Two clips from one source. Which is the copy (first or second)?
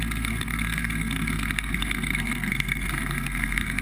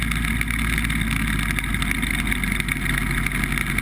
first